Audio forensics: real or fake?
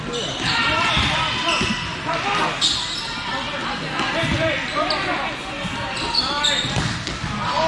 real